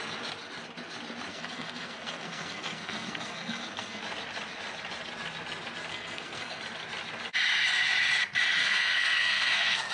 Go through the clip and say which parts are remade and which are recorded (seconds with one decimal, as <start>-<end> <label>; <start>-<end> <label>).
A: 0.0-1.3 recorded; 1.3-4.0 remade; 4.0-5.9 recorded; 5.9-6.6 remade; 6.6-8.6 recorded; 8.6-9.9 remade